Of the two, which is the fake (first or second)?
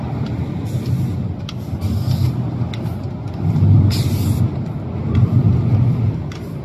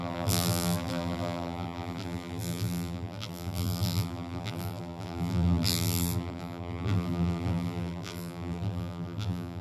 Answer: second